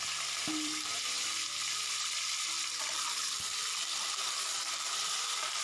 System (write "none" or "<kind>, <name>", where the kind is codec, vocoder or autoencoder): vocoder, BigVGAN v2